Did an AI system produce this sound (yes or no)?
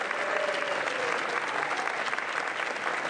no